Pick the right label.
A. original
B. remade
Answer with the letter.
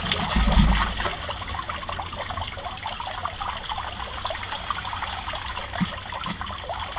A